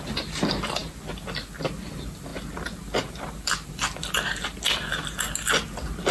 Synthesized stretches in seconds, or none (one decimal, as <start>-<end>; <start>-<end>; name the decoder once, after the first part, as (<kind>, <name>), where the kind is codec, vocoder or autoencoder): none